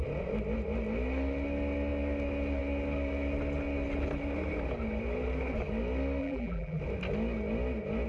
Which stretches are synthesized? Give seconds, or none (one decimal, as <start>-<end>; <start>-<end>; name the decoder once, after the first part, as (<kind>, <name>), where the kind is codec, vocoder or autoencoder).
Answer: 6.2-6.8 (vocoder, BigVGAN v2)